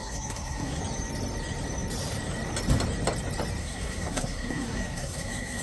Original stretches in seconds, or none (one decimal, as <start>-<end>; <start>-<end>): 0.8-3.6